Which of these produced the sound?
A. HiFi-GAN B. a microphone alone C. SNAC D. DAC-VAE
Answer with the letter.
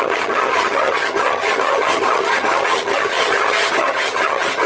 A